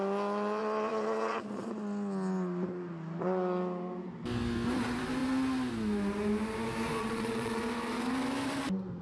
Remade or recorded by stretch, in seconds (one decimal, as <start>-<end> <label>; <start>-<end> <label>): 0.0-0.6 recorded; 0.6-1.7 remade; 1.7-7.0 recorded; 7.0-7.6 remade; 7.6-9.0 recorded